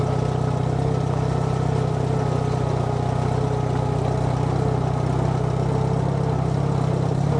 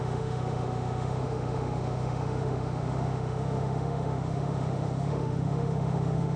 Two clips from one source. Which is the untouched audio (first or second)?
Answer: first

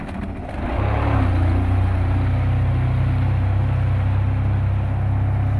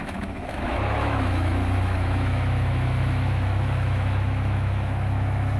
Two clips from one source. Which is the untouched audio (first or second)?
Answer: first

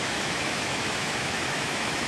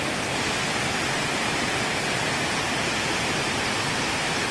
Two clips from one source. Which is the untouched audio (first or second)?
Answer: second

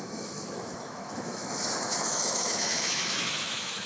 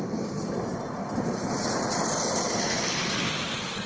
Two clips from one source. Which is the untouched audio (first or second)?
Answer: second